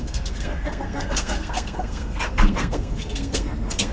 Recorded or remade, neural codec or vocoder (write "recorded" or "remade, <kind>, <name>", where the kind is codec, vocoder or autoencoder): remade, codec, SNAC